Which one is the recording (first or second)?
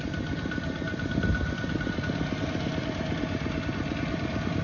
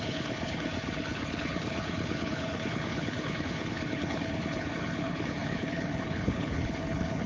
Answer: first